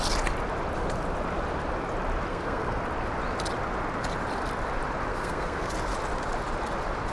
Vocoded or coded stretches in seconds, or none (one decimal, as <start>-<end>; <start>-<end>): 2.3-2.8; 5.1-5.7